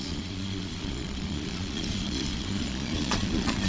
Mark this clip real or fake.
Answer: fake